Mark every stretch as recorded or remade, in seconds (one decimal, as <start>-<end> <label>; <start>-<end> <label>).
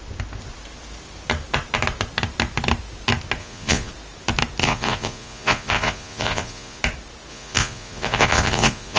0.0-3.4 recorded; 3.4-3.9 remade; 3.9-4.6 recorded; 4.6-6.8 remade; 6.8-7.3 recorded; 7.3-9.0 remade